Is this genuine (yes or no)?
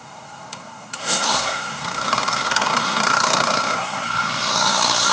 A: no